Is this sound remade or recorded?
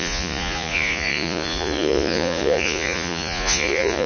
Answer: remade